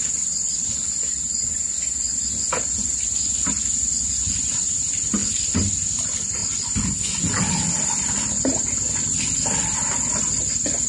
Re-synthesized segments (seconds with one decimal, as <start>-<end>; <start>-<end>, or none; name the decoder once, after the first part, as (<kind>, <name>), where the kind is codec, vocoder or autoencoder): none